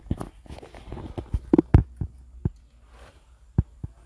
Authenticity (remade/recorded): recorded